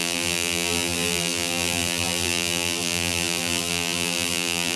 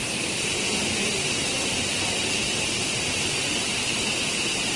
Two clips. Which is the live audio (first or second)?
second